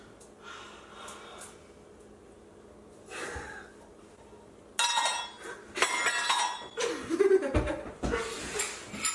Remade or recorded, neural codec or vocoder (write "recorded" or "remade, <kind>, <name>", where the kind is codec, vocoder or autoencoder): recorded